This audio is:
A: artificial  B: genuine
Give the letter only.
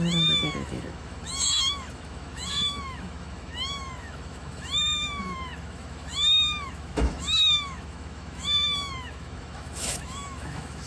A